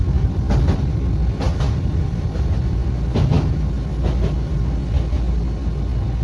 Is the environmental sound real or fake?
real